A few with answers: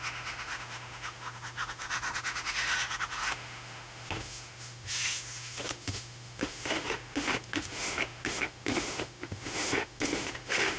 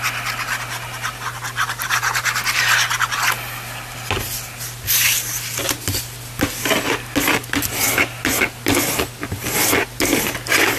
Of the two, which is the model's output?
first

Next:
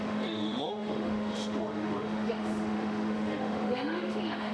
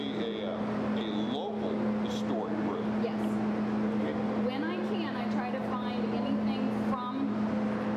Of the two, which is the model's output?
first